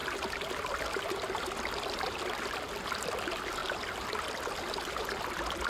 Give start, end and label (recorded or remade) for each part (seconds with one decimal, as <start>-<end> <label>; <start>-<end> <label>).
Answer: 0.0-5.7 recorded